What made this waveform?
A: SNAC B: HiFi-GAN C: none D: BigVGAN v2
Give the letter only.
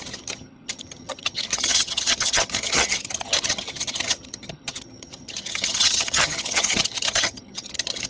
B